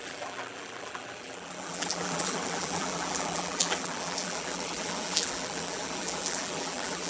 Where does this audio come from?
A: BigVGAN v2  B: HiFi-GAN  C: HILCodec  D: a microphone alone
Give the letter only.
A